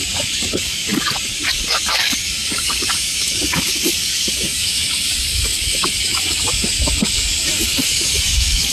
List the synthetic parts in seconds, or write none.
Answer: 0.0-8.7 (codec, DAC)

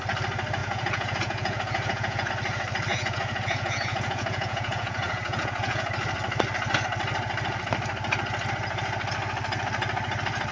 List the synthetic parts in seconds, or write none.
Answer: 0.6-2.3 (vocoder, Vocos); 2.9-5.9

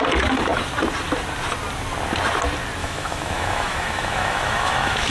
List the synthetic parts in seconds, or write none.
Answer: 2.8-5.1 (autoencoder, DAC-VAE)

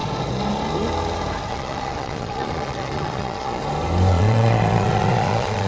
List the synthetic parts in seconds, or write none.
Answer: 1.5-3.6 (vocoder, Vocos); 4.1-5.7

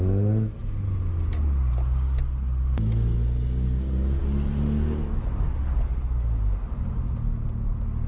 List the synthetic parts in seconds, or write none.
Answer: none

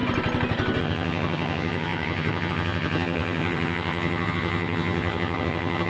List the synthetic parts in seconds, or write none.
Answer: 0.8-5.9 (vocoder, HiFi-GAN)

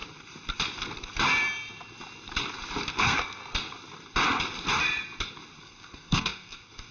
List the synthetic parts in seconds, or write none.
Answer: 2.9-3.4 (codec, SNAC); 5.6-6.9

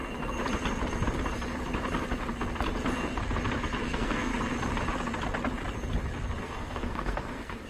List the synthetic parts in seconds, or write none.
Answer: 3.8-4.3 (codec, SNAC); 6.4-7.7